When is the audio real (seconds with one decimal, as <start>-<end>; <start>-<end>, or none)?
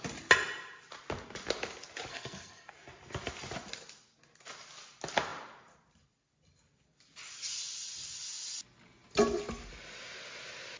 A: 0.0-2.1; 2.7-10.8